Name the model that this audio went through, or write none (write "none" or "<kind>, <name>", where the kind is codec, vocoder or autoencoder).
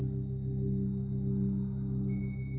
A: none